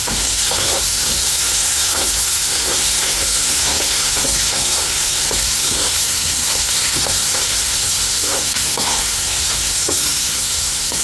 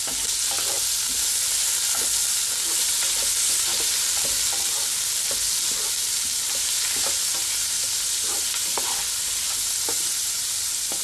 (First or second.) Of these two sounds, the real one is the second